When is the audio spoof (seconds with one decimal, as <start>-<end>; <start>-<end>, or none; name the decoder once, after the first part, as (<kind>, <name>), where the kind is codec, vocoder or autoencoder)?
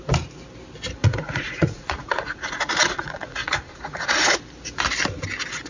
1.0-4.4 (vocoder, Vocos)